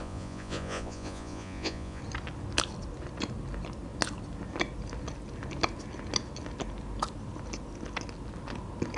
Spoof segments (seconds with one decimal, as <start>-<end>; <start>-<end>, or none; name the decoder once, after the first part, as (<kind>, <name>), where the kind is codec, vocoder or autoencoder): 0.0-2.0 (vocoder, Vocos)